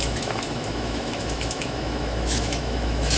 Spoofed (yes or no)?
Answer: yes